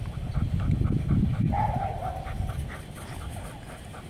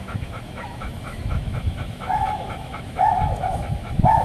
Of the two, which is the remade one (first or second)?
second